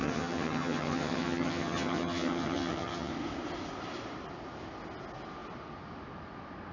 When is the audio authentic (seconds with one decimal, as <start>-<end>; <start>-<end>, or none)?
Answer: 3.1-6.7